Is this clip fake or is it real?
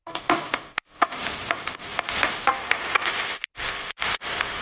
fake